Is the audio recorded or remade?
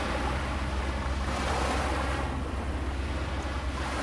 recorded